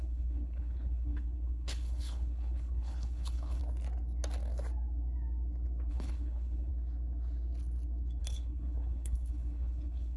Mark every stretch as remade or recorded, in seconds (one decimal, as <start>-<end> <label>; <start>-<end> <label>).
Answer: 0.0-3.6 remade; 3.6-5.9 recorded; 5.9-6.7 remade; 6.7-8.2 recorded; 8.2-10.2 remade